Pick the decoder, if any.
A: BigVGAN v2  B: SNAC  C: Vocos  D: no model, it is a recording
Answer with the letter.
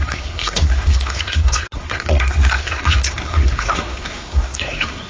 B